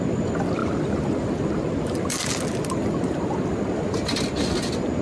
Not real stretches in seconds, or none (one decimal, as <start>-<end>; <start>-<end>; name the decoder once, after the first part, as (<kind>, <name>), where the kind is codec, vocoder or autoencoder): none